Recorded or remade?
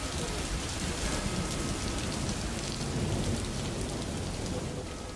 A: recorded